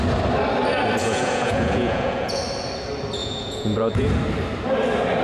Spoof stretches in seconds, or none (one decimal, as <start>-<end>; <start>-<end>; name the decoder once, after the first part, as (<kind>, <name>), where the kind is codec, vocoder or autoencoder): 1.0-2.4 (vocoder, Vocos); 3.2-4.1